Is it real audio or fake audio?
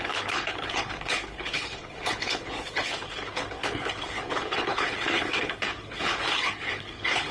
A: fake